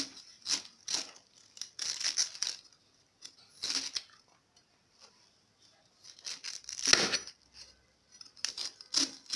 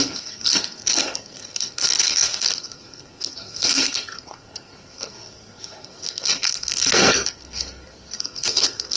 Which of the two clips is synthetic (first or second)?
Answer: second